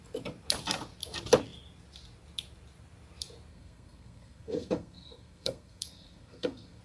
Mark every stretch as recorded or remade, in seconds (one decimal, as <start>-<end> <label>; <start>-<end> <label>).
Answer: 0.0-3.5 recorded; 3.5-6.8 remade